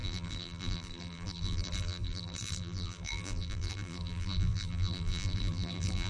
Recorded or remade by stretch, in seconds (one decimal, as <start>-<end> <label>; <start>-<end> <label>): 0.0-6.1 remade